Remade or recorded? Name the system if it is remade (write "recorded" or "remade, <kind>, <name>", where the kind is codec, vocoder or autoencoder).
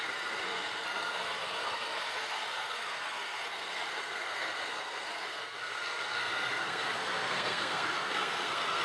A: remade, codec, SNAC